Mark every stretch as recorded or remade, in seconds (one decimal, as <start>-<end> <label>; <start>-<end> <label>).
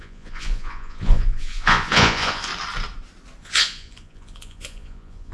0.0-2.5 remade; 2.5-3.4 recorded; 3.4-5.3 remade